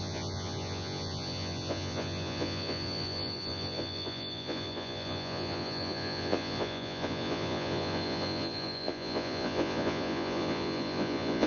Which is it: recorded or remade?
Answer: remade